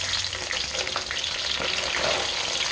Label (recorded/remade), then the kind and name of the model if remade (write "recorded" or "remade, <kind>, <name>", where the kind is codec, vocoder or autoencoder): recorded